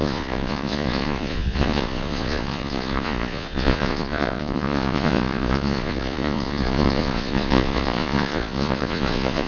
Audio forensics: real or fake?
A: fake